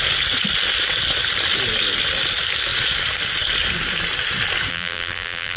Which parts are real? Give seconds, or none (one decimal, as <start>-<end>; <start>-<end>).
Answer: 0.0-4.7